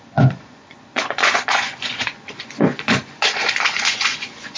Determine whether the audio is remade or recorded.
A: remade